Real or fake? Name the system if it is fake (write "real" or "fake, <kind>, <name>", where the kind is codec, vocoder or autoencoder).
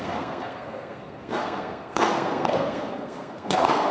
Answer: fake, codec, SNAC